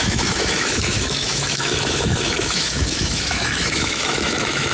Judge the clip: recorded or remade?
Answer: remade